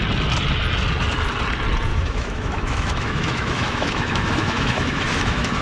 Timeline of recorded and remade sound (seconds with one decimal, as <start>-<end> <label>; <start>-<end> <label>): 0.0-1.9 recorded; 1.9-5.6 remade